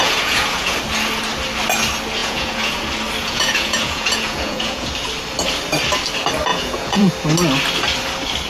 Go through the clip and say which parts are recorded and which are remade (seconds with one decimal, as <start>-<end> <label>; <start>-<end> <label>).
0.0-0.8 remade; 0.8-2.2 recorded; 2.2-2.8 remade; 2.8-3.2 recorded; 3.2-4.9 remade; 4.9-6.5 recorded; 6.5-7.1 remade; 7.1-8.5 recorded